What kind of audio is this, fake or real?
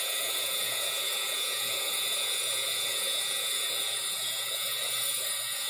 fake